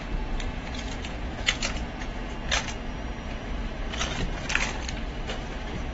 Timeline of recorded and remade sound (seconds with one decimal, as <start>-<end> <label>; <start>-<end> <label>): 0.0-0.5 recorded; 0.5-2.3 remade; 2.3-5.9 recorded